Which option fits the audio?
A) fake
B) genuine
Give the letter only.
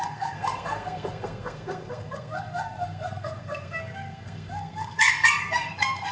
A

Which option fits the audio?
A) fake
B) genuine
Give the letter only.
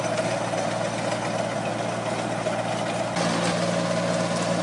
B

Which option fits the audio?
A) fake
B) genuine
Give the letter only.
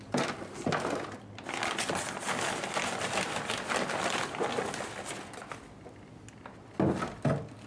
B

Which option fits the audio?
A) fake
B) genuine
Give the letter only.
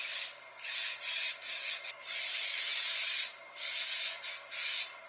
B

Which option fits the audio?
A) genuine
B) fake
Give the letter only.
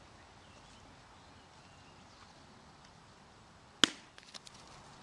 A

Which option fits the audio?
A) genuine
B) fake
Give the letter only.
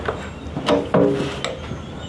A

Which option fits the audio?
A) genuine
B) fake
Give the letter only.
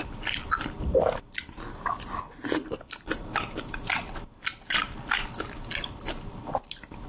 A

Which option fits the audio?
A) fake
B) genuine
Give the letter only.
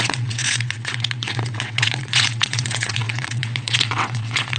A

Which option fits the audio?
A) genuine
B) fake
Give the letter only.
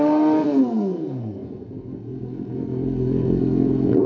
B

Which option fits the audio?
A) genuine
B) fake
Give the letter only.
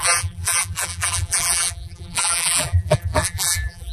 B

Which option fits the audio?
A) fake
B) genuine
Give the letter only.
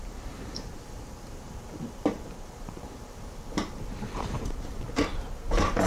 A